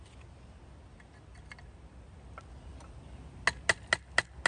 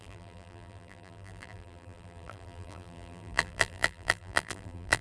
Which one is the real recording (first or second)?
first